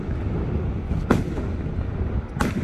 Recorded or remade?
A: recorded